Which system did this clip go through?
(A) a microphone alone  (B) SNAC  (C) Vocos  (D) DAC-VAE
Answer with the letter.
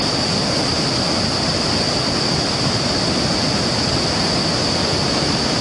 A